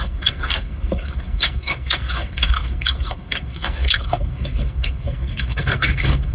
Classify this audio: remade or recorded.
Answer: remade